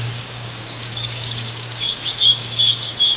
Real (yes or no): no